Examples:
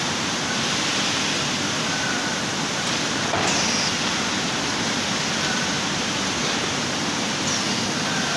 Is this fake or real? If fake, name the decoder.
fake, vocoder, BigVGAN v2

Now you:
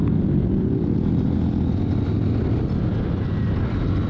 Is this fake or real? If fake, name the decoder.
fake, vocoder, BigVGAN v2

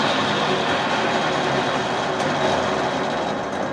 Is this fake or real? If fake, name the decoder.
real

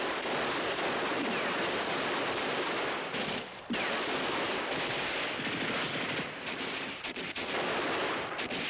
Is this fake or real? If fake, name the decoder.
fake, vocoder, BigVGAN v2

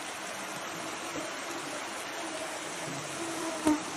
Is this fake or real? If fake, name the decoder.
fake, vocoder, BigVGAN v2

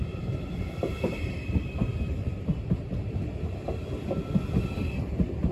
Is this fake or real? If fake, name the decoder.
fake, vocoder, BigVGAN v2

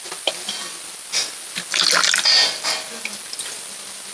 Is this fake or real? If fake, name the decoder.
real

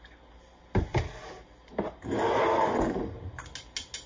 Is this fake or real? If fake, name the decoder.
real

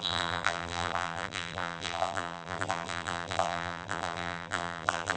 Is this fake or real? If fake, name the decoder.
fake, vocoder, BigVGAN v2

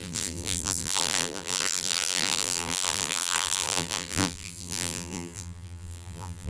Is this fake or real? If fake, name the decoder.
fake, vocoder, BigVGAN v2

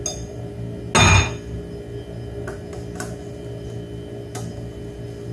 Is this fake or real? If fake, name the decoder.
real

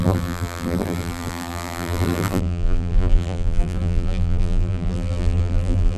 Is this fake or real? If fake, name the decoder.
fake, vocoder, BigVGAN v2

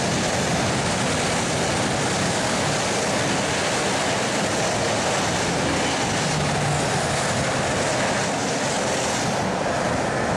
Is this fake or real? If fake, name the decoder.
real